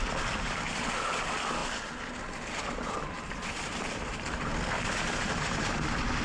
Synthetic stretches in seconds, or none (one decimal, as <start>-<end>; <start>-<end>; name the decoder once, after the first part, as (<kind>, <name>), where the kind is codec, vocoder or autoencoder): none